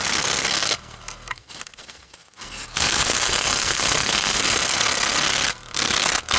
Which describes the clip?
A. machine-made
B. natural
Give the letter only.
A